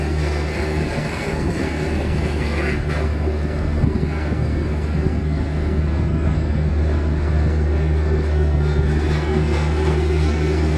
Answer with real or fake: fake